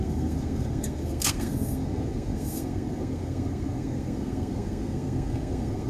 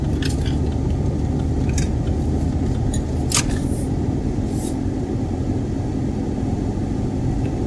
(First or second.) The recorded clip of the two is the second